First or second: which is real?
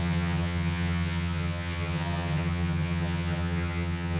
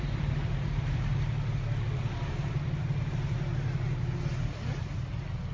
second